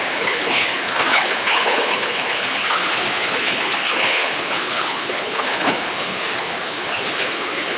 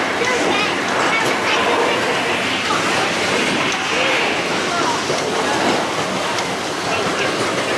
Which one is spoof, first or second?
first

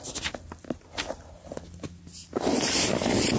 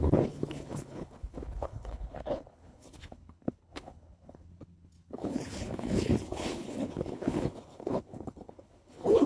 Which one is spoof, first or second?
second